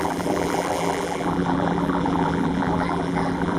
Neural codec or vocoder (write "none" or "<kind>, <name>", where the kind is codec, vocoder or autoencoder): vocoder, BigVGAN v2